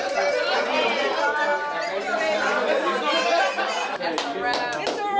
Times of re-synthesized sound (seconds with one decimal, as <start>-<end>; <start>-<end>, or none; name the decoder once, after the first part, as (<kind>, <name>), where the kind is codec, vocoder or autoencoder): none